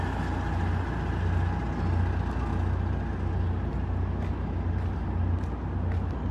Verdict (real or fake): real